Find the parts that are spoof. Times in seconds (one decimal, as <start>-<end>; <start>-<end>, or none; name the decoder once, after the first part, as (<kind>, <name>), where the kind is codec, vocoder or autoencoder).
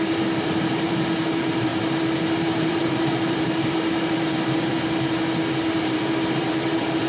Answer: 0.0-1.7 (vocoder, BigVGAN v2); 2.4-4.7; 5.8-7.1